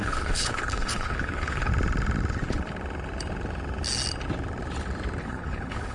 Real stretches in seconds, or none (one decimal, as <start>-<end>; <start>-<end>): 1.7-5.2